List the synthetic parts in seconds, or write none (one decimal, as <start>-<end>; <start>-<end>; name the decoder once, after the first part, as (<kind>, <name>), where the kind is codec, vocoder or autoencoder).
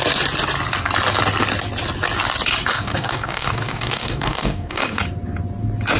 2.7-5.0 (codec, DAC)